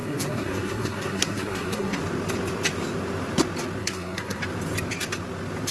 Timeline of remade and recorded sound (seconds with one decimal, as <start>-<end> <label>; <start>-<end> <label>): 0.0-2.0 remade; 2.0-3.8 recorded; 3.8-4.4 remade; 4.4-5.7 recorded